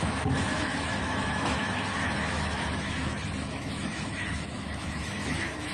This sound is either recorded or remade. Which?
remade